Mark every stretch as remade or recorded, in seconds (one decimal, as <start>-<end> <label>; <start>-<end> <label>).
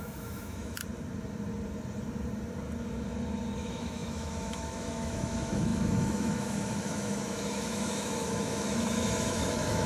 0.0-0.8 remade; 0.8-3.6 recorded; 3.6-9.9 remade